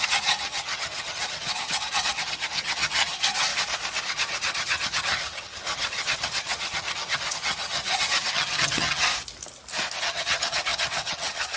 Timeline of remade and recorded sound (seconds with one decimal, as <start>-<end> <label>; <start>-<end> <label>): 0.0-3.5 remade; 3.5-4.0 recorded; 4.0-9.1 remade; 9.1-10.0 recorded; 10.0-11.6 remade